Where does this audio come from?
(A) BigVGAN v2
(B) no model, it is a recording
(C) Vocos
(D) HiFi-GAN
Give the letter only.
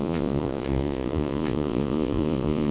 C